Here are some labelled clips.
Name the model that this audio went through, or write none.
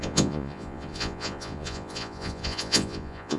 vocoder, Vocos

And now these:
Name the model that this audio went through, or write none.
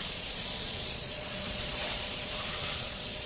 vocoder, Vocos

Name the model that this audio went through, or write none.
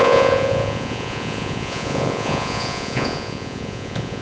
vocoder, Vocos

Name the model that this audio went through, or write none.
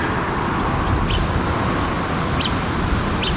none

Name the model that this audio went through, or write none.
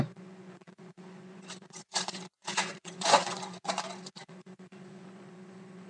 vocoder, Vocos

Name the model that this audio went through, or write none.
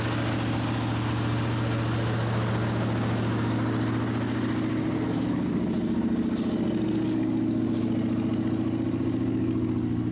none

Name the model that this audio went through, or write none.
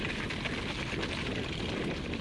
none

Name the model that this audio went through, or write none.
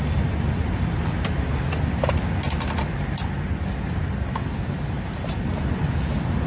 none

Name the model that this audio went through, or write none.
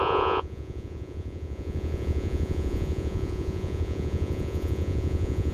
vocoder, Vocos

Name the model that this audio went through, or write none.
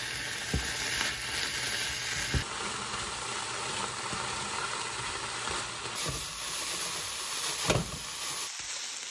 none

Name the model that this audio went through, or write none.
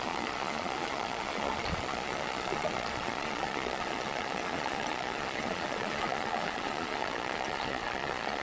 vocoder, Vocos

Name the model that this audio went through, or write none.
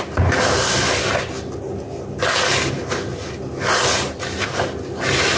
none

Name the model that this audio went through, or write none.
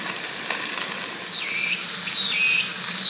none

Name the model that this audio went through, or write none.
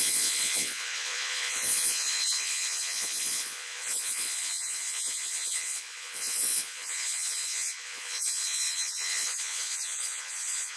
vocoder, Vocos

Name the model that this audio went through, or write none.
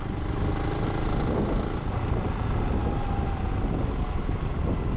none